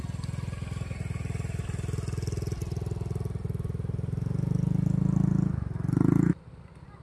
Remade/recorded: recorded